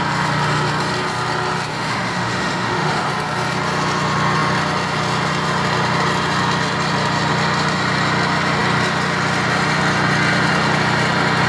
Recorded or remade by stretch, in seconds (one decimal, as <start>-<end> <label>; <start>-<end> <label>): 0.0-1.7 recorded; 1.7-3.1 remade; 3.1-11.5 recorded